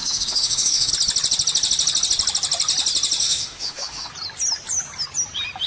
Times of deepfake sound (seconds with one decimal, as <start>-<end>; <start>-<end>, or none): 0.0-0.9; 3.2-4.1